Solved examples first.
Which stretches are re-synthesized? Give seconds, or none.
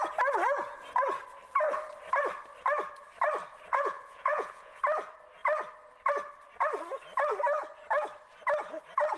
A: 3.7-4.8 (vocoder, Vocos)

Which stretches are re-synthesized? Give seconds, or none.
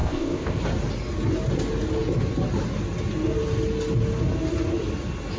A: 0.0-0.6 (codec, ZipCodec)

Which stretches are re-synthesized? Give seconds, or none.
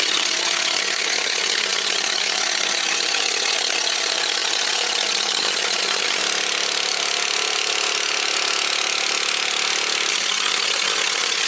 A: 0.0-6.2 (vocoder, HiFi-GAN); 10.1-11.5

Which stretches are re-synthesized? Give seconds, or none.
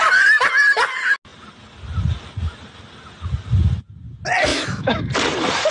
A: 4.5-5.0 (autoencoder, DAC-VAE)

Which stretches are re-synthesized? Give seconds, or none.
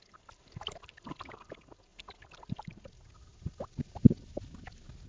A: none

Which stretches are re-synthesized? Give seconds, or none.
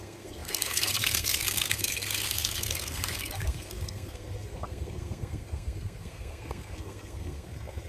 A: 0.0-7.9 (codec, SNAC)